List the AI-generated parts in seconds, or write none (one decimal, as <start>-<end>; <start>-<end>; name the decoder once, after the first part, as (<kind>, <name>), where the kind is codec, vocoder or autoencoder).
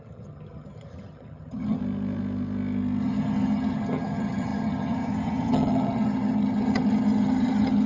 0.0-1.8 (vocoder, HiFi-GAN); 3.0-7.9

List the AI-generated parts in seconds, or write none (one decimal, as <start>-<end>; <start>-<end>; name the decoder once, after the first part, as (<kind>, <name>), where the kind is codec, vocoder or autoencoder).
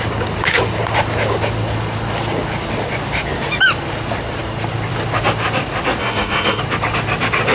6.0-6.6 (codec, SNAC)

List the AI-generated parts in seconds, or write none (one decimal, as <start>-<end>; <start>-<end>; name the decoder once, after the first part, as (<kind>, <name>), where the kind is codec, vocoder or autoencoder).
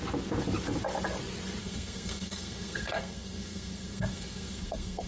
1.6-5.1 (codec, SNAC)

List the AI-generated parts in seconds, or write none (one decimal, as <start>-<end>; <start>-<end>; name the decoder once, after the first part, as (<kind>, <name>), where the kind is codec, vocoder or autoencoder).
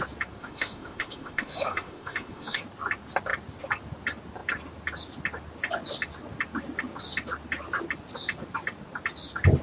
0.4-2.6 (autoencoder, DAC-VAE)